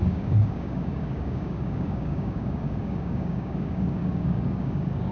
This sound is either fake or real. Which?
fake